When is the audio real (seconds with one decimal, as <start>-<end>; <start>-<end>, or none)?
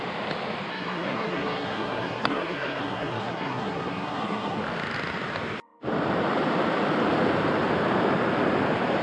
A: 0.0-0.7; 4.6-9.0